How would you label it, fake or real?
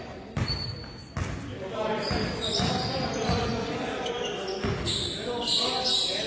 real